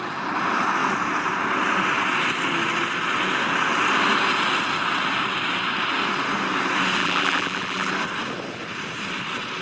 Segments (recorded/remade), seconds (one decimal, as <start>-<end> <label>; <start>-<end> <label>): 0.0-7.0 recorded; 7.0-7.9 remade; 7.9-9.6 recorded